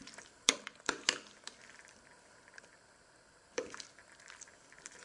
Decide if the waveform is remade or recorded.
recorded